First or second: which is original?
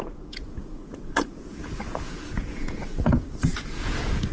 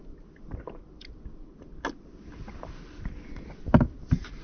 second